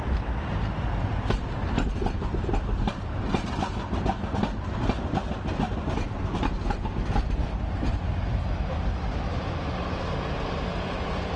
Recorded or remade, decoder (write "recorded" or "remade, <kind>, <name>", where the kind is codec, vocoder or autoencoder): recorded